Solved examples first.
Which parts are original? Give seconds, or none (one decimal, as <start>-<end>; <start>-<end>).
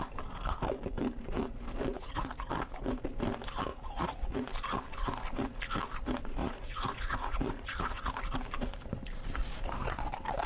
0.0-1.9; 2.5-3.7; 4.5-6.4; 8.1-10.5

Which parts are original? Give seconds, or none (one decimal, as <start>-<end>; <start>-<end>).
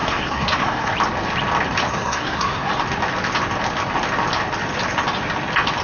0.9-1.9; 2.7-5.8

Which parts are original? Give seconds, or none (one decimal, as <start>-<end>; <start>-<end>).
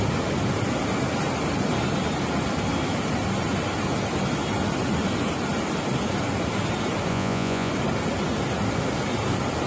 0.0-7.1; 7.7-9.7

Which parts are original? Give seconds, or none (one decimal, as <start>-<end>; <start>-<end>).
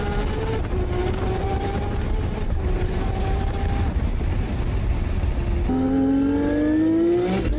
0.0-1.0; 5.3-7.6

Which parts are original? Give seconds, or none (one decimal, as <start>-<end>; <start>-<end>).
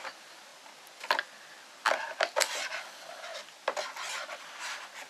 0.0-5.1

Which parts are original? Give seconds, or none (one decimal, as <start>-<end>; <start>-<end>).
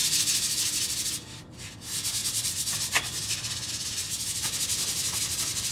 0.0-5.7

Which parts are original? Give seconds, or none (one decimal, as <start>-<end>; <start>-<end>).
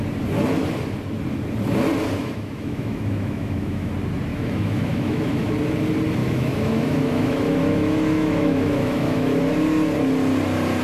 0.0-2.2; 3.9-4.3; 5.5-6.2; 9.4-10.8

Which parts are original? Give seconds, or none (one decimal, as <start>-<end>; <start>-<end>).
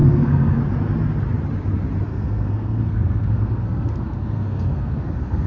0.6-2.1